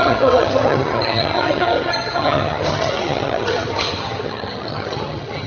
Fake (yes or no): yes